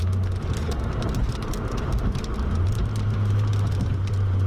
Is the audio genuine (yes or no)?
no